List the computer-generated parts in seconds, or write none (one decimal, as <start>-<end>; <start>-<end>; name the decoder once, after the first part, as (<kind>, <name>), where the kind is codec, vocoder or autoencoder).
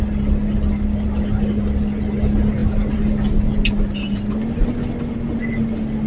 none